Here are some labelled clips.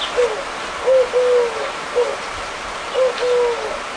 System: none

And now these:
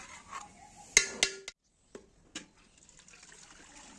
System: none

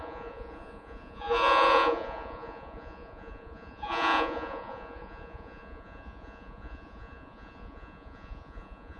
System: vocoder, Vocos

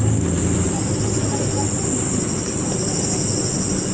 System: none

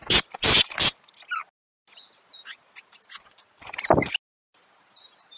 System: none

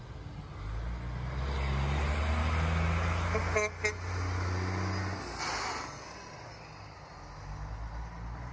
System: none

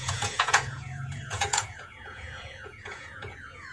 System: vocoder, Vocos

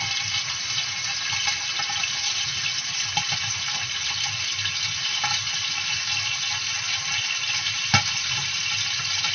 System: none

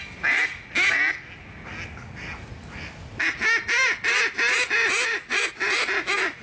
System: none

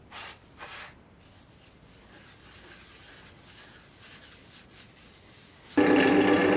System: none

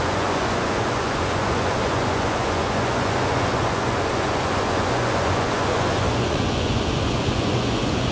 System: vocoder, Vocos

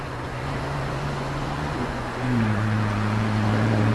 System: vocoder, Vocos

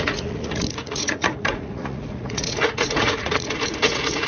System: vocoder, Vocos